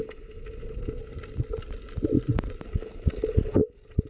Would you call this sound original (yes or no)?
yes